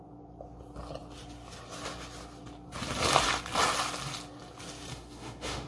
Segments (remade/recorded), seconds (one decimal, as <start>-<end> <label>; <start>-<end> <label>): 0.0-4.9 recorded; 4.9-5.7 remade